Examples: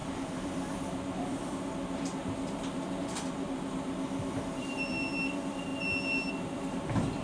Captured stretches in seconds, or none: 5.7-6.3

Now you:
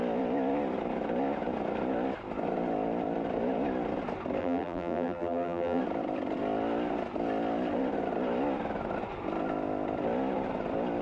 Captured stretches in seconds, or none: 0.0-4.4; 5.8-11.0

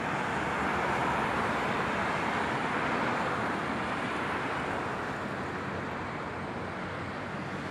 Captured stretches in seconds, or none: 0.0-1.0; 1.7-7.7